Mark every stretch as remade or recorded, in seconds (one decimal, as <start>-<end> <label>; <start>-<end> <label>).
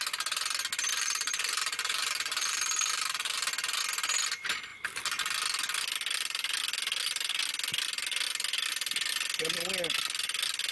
0.0-0.9 recorded; 0.9-3.5 remade; 3.5-10.7 recorded